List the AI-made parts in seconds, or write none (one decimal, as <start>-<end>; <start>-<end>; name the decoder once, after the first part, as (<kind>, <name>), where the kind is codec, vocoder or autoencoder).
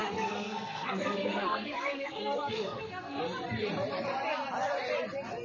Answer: 0.0-3.2 (codec, SNAC)